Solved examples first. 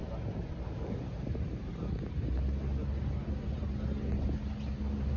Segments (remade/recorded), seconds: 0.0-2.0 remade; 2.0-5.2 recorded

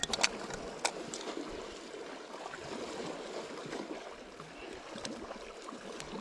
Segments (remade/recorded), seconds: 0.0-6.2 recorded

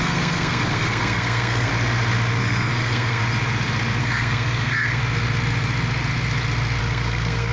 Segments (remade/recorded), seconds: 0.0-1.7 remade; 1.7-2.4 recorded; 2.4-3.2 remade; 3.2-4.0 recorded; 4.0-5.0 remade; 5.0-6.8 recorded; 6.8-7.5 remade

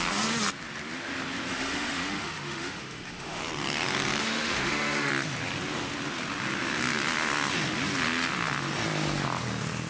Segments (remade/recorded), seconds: 0.0-1.5 recorded; 1.5-3.4 remade; 3.4-4.2 recorded; 4.2-5.1 remade; 5.1-9.9 recorded